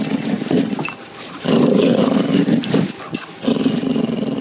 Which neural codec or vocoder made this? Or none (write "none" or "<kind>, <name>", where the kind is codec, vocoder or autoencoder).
none